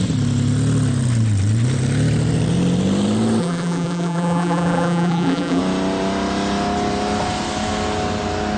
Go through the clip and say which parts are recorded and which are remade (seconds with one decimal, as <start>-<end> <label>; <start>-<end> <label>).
0.0-3.4 recorded; 3.4-5.6 remade; 5.6-8.6 recorded